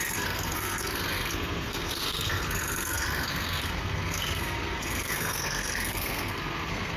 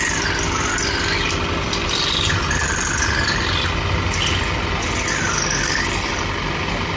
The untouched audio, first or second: second